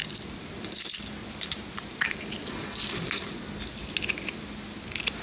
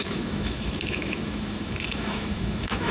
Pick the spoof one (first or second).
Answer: second